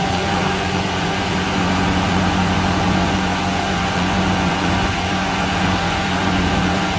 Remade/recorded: remade